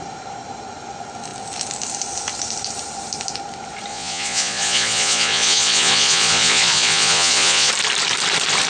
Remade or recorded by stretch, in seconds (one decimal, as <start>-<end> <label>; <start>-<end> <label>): 0.0-3.9 recorded; 3.9-7.7 remade; 7.7-8.7 recorded